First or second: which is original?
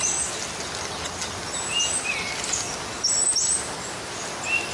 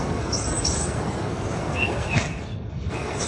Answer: first